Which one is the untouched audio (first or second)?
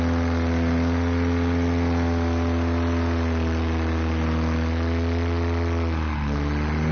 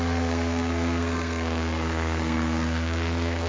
first